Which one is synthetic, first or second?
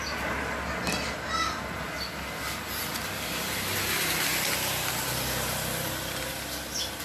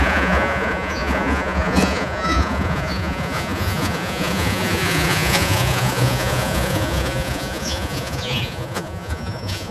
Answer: second